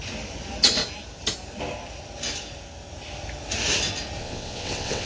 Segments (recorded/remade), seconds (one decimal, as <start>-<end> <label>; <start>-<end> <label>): 0.0-4.2 recorded; 4.2-5.1 remade

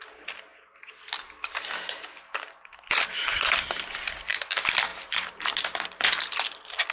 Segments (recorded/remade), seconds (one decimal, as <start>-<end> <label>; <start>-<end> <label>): 0.0-4.9 recorded; 4.9-5.5 remade; 5.5-6.9 recorded

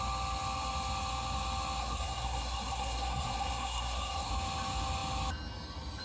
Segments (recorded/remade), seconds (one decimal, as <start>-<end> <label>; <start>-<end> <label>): 0.0-1.8 recorded; 1.8-4.3 remade; 4.3-6.0 recorded

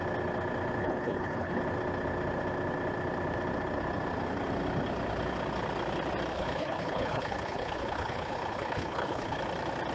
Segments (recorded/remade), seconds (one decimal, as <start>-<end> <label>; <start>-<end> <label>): 0.0-0.8 recorded; 0.8-1.6 remade; 1.6-6.3 recorded; 6.3-9.4 remade; 9.4-9.9 recorded

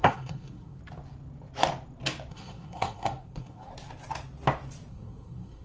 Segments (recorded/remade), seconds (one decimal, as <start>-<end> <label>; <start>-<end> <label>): 0.0-0.8 remade; 0.8-2.3 recorded; 2.3-3.7 remade; 3.7-4.9 recorded; 4.9-5.6 remade

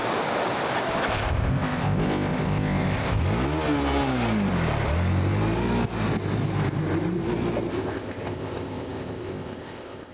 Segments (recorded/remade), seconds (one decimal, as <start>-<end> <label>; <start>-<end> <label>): 0.0-1.1 recorded; 1.1-3.2 remade; 3.2-7.7 recorded; 7.7-10.1 remade